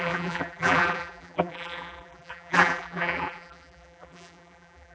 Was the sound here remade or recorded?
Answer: remade